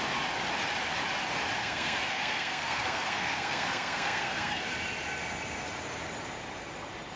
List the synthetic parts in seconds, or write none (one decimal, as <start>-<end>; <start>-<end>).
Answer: 1.6-4.6